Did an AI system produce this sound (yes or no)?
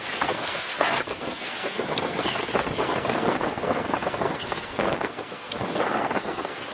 yes